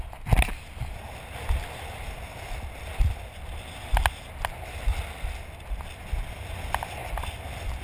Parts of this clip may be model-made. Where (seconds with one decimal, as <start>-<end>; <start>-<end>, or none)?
none